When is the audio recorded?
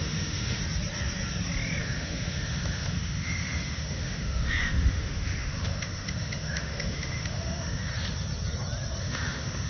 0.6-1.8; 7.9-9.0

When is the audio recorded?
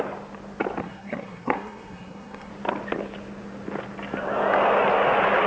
0.0-0.8; 2.5-5.5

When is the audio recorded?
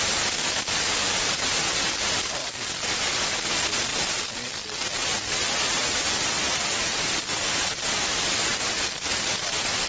0.0-2.4; 3.5-3.9; 8.1-8.5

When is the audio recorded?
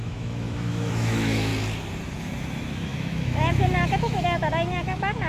1.5-2.2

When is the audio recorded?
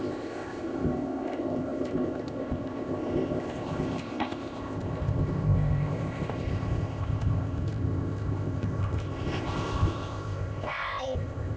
none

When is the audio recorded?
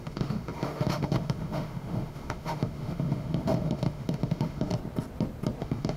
4.7-5.6